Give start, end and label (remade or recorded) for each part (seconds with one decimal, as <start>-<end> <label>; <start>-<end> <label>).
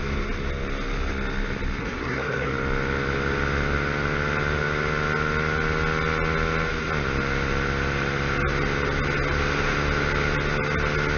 0.0-1.8 recorded; 1.8-2.5 remade; 2.5-11.2 recorded